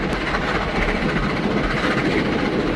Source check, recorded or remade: recorded